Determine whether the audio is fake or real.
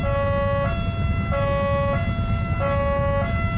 real